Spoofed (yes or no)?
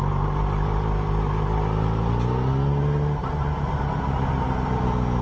no